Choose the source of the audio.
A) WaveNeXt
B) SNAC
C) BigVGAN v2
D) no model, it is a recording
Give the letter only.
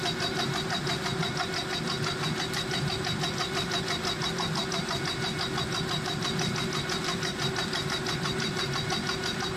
D